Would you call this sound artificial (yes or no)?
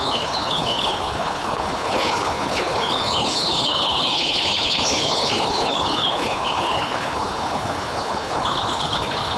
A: yes